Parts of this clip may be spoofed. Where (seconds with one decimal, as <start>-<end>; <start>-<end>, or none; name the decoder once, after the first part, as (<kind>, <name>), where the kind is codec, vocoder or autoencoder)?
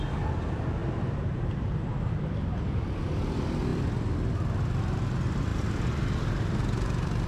0.8-2.1 (vocoder, BigVGAN v2)